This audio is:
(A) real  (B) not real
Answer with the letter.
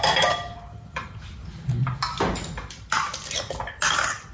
A